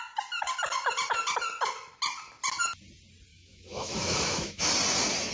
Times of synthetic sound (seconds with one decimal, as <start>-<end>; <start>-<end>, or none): 3.3-4.7